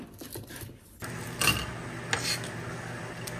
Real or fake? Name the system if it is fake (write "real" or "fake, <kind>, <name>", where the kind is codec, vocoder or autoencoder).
real